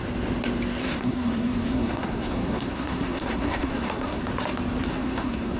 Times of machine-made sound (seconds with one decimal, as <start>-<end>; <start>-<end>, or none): 0.8-4.2; 4.9-5.6